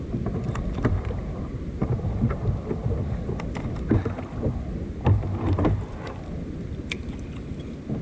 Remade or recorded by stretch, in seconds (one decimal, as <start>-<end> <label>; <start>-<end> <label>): 0.0-8.0 recorded